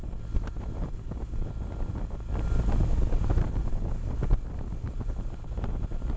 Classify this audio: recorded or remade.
recorded